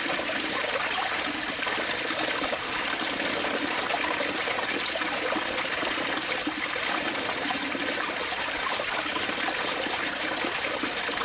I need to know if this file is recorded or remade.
recorded